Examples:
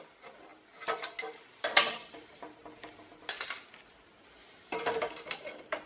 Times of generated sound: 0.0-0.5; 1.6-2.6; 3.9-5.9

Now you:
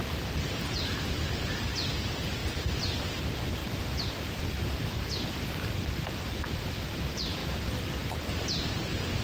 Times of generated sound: none

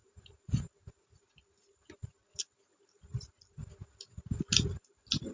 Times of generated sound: 0.0-2.4

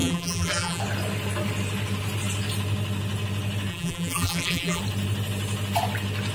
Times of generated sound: 0.0-0.8; 3.7-4.8

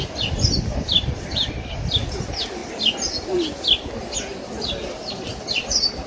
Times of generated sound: 0.0-2.6; 4.6-6.1

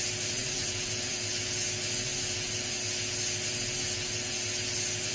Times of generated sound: 0.0-2.1; 4.6-5.1

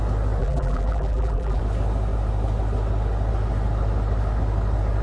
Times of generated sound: 0.4-1.6

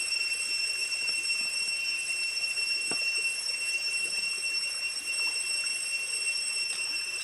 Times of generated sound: 0.0-5.7; 6.3-7.2